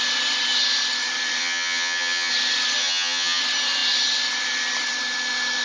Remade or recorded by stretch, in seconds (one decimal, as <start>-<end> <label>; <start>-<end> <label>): 0.0-1.4 recorded; 1.4-2.3 remade; 2.3-2.8 recorded; 2.8-3.4 remade; 3.4-5.6 recorded